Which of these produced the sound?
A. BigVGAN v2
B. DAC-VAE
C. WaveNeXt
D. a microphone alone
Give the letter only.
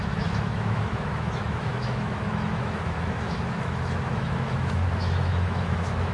B